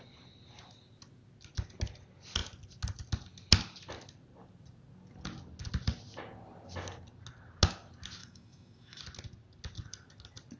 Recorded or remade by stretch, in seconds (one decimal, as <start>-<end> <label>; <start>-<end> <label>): 0.0-8.2 recorded; 8.2-9.0 remade; 9.0-10.6 recorded